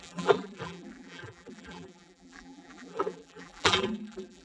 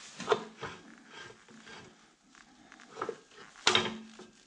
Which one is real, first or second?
second